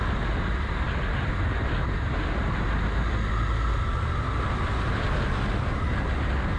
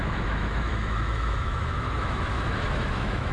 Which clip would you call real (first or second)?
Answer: first